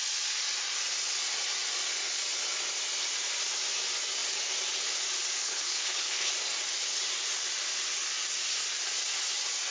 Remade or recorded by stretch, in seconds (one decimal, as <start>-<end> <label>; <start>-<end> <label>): 0.0-5.4 recorded; 5.4-6.3 remade; 6.3-9.7 recorded